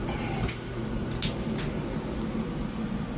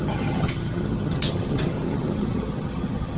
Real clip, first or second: first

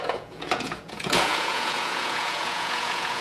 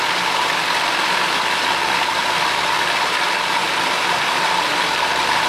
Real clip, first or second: second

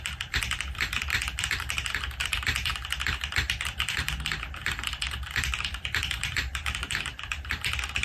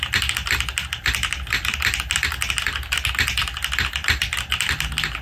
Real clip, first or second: second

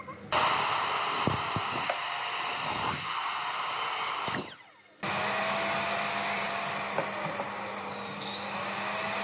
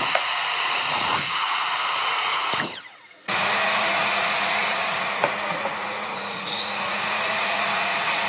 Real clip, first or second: first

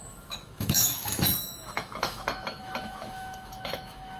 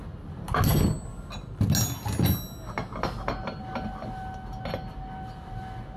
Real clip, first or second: second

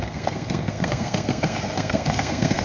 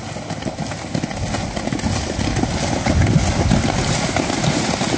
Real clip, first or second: second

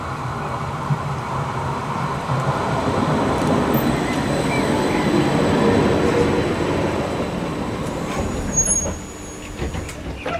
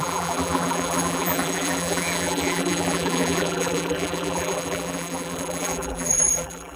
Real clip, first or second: first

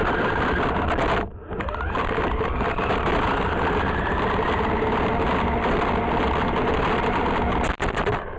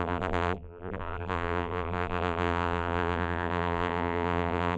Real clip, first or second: first